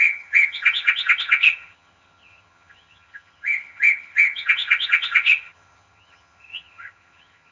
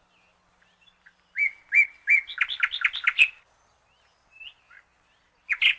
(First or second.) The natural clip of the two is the second